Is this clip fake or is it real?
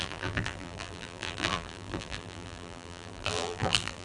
fake